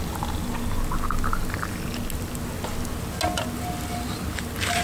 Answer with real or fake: real